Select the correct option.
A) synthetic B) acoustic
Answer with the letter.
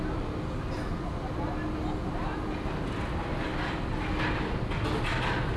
B